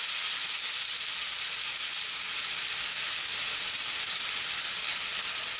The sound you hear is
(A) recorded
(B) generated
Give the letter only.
A